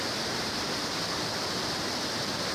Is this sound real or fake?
real